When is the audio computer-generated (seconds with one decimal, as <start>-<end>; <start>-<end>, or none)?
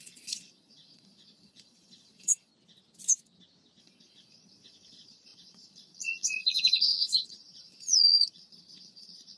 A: 0.0-2.5; 3.8-9.4